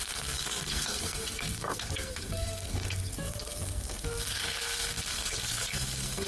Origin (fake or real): fake